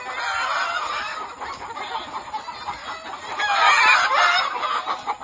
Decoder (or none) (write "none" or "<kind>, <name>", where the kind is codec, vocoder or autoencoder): none